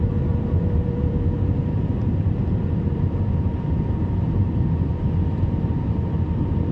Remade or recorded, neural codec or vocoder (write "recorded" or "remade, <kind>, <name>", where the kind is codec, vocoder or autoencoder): remade, vocoder, BigVGAN v2